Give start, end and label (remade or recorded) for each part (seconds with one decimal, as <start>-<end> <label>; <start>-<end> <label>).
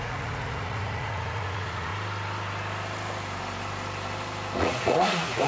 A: 0.0-1.9 remade; 1.9-4.6 recorded; 4.6-5.5 remade